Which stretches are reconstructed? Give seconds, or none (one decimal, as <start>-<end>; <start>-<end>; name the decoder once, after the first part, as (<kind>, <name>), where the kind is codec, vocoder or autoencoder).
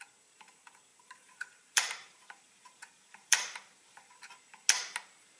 0.9-4.1 (vocoder, BigVGAN v2)